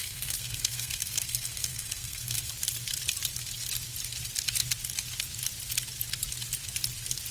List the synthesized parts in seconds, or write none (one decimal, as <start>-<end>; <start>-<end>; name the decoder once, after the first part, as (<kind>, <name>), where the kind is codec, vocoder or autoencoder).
0.0-2.5 (codec, SNAC)